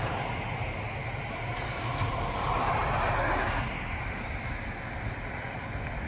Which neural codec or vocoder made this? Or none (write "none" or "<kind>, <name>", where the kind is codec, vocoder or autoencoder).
none